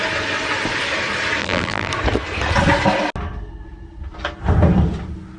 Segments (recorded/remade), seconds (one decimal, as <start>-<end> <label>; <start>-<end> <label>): 0.0-1.4 recorded; 1.4-1.9 remade; 1.9-5.4 recorded